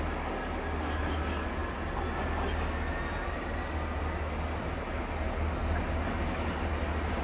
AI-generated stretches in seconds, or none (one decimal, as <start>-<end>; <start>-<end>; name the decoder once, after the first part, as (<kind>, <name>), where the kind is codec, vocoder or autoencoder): none